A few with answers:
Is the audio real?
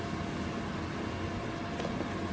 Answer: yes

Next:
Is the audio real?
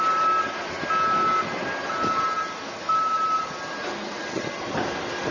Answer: yes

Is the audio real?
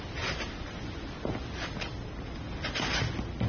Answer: yes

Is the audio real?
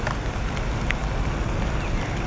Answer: yes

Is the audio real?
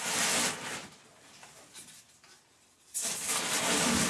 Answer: yes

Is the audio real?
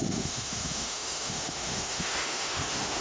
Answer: no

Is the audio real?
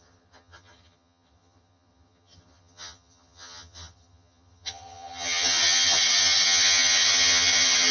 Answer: no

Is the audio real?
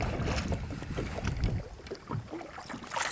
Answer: yes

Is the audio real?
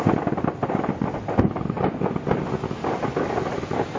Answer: yes